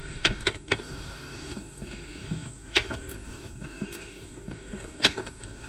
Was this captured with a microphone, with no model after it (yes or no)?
no